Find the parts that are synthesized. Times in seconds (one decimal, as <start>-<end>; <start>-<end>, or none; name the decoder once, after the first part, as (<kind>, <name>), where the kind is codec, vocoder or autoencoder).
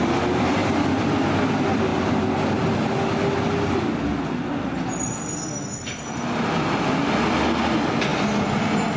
0.6-1.1 (vocoder, BigVGAN v2)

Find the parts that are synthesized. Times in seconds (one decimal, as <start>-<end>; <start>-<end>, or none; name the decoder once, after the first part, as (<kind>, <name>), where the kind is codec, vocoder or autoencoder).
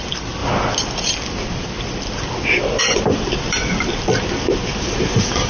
0.0-0.4 (vocoder, BigVGAN v2); 2.8-5.5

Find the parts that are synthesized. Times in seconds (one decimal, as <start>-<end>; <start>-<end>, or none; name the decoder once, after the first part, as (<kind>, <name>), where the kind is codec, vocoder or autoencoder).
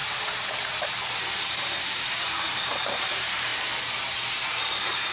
0.0-3.5 (vocoder, BigVGAN v2); 4.4-5.1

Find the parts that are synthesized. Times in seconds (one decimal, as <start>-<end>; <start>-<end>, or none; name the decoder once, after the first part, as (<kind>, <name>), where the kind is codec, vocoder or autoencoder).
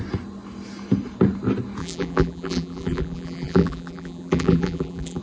1.8-5.2 (vocoder, BigVGAN v2)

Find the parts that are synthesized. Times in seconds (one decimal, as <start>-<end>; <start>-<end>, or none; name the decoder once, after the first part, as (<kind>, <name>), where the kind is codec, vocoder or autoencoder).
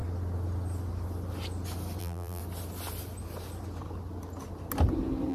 2.0-2.4 (vocoder, BigVGAN v2)